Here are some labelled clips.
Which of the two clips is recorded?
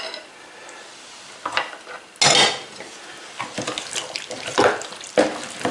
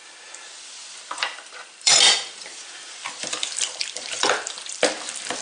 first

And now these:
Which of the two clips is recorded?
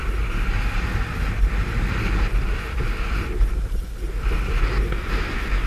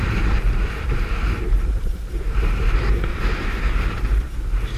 first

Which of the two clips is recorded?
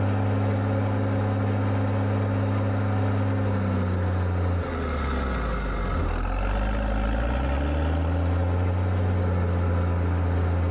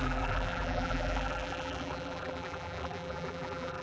first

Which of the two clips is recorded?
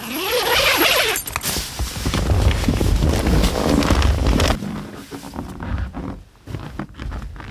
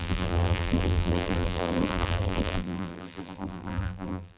first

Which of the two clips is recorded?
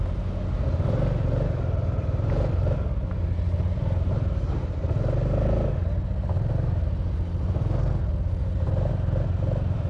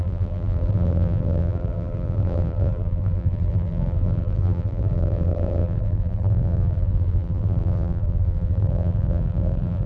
first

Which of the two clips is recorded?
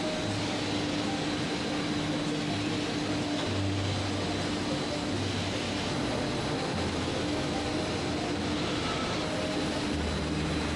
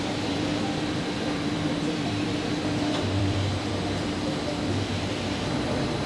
first